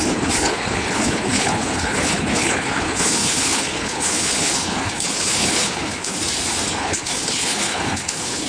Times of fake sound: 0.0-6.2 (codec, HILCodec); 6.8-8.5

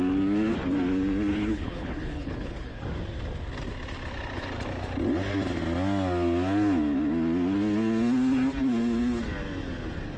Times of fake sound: 1.3-2.8 (codec, HILCodec)

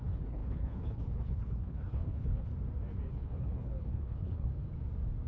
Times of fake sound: 0.0-2.5 (codec, HILCodec); 3.1-4.5

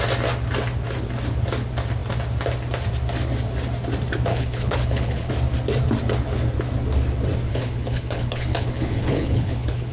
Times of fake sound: 4.3-5.3 (codec, HILCodec); 7.5-9.9